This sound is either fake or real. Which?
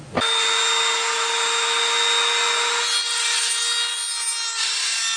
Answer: real